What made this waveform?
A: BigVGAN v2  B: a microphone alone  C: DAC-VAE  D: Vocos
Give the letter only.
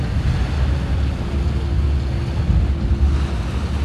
B